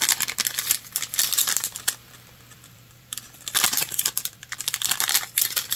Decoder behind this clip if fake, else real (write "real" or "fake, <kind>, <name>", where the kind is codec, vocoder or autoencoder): fake, vocoder, BigVGAN v2